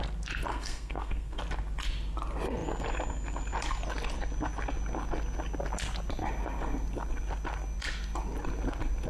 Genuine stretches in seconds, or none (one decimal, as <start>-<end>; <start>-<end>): 0.0-0.5; 1.4-9.1